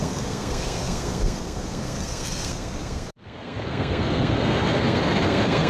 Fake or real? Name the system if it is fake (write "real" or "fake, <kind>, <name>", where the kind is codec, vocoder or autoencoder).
fake, codec, SNAC